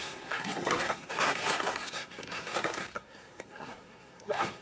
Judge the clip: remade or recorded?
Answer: remade